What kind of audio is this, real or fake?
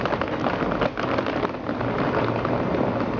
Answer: real